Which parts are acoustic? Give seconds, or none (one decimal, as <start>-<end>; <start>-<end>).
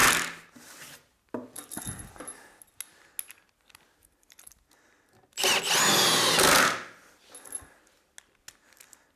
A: 0.0-9.2